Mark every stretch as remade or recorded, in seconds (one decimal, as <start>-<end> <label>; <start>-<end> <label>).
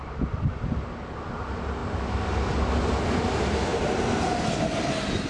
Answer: 0.0-5.3 recorded